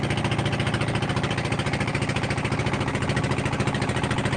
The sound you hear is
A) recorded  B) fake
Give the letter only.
A